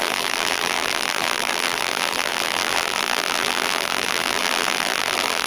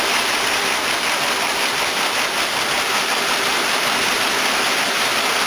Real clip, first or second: second